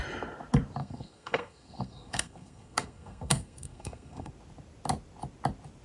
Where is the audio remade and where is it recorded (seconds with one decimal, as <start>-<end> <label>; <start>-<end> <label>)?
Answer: 0.0-0.8 recorded; 0.8-4.3 remade; 4.3-5.8 recorded